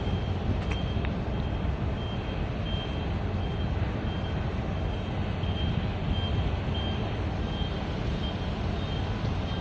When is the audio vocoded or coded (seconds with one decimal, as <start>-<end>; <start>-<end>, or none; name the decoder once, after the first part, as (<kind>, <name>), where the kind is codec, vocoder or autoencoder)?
none